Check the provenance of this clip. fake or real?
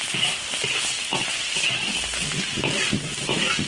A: real